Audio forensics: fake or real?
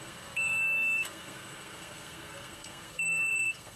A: fake